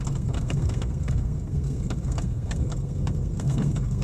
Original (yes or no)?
no